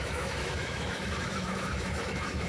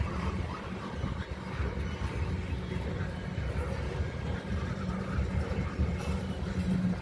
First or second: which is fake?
first